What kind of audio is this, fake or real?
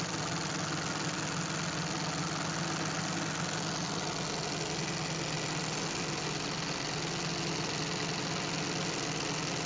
real